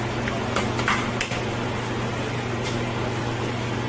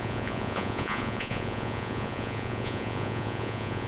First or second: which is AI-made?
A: second